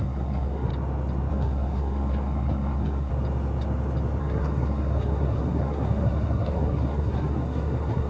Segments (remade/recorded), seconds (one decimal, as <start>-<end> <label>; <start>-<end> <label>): 0.0-0.7 remade; 0.7-1.3 recorded; 1.3-3.1 remade; 3.1-4.2 recorded; 4.2-8.1 remade